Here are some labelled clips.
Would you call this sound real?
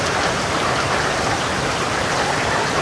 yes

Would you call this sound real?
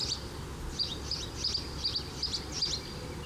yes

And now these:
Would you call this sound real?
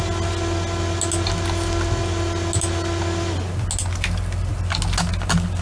yes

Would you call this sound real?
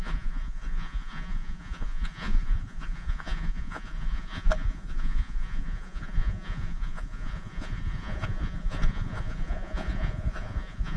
no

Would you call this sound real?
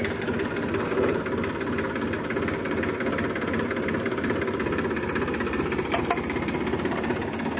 yes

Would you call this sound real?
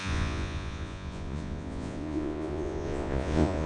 no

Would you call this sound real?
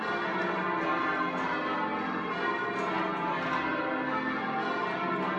yes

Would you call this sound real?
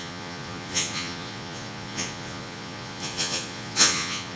no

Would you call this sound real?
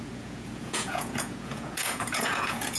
no